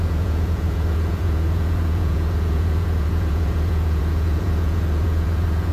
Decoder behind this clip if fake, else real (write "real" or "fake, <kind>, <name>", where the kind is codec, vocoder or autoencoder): fake, vocoder, Vocos